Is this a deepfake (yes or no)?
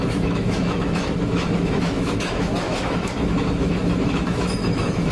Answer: yes